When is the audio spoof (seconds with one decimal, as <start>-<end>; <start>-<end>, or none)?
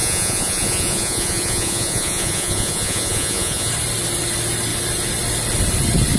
0.0-3.7